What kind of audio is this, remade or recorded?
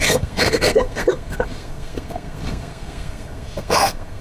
remade